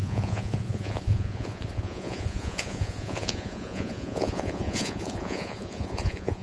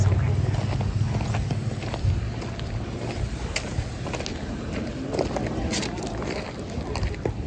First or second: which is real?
second